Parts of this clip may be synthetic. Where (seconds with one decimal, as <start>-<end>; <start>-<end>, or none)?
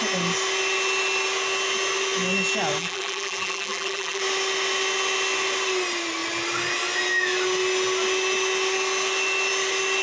2.8-4.2